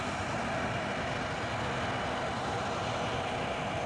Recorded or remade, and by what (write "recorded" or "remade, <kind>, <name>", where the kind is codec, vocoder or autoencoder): recorded